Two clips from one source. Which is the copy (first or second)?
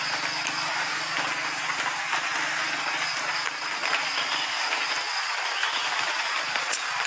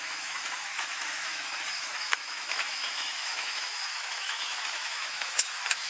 second